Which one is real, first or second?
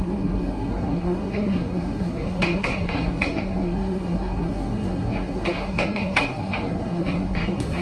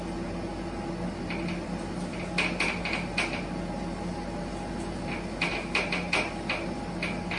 second